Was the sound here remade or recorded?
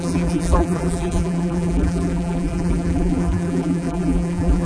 remade